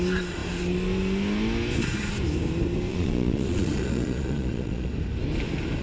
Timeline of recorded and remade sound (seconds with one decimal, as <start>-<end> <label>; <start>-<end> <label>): 0.0-2.9 recorded; 2.9-4.9 remade; 4.9-5.8 recorded